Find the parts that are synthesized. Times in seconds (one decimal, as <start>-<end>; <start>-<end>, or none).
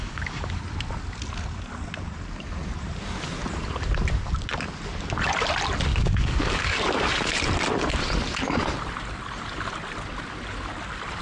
0.0-0.6; 5.9-6.8